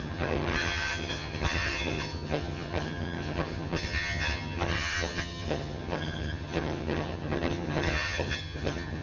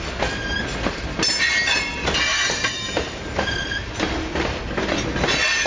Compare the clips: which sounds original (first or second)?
second